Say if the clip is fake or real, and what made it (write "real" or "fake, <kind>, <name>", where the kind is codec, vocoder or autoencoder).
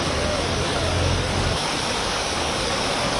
fake, codec, DAC